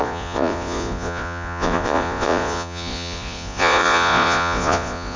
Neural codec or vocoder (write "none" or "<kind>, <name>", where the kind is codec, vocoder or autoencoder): vocoder, Vocos